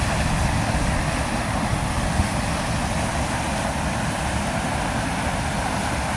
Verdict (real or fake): real